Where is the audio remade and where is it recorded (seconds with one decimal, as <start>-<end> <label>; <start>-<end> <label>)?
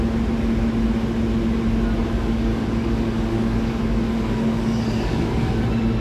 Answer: 0.0-2.0 recorded; 2.0-5.6 remade; 5.6-6.0 recorded